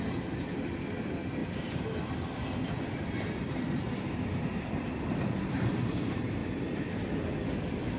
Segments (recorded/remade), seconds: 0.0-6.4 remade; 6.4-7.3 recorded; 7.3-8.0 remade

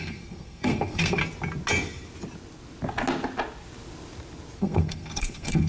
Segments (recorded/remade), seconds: 0.0-1.2 remade; 1.2-4.6 recorded; 4.6-5.7 remade

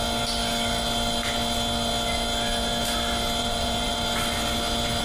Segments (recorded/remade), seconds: 0.0-3.4 recorded; 3.4-4.0 remade; 4.0-5.0 recorded

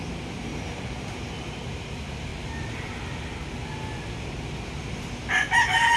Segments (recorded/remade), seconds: 0.0-0.5 recorded; 0.5-1.4 remade; 1.4-6.0 recorded